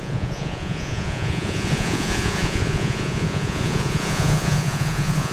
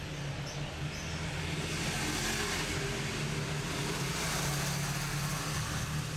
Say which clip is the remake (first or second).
first